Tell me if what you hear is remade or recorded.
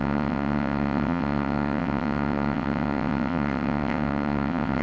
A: remade